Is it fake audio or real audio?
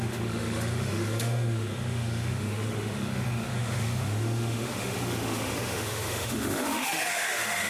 fake